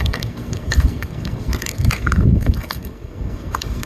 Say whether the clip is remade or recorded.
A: remade